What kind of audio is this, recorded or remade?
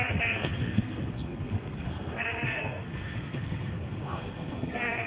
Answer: remade